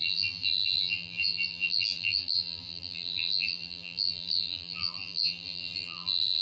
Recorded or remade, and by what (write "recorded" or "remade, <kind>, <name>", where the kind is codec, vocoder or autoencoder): remade, vocoder, BigVGAN v2